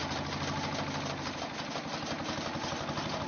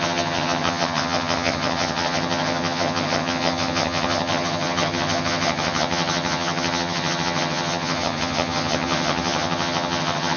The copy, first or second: second